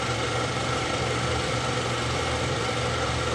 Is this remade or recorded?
remade